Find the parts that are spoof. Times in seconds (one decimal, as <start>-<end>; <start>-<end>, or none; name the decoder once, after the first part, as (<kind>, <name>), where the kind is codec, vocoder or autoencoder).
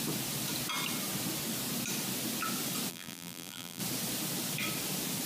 2.9-3.8 (vocoder, BigVGAN v2)